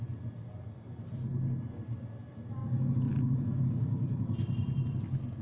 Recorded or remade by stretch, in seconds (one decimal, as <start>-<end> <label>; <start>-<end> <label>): 0.0-5.4 recorded